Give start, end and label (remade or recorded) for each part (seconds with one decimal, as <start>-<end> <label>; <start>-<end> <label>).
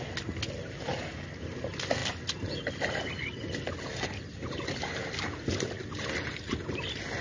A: 0.0-7.2 recorded